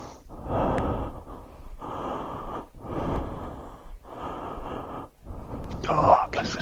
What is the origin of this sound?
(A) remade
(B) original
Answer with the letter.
B